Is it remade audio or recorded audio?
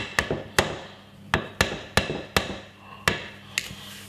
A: recorded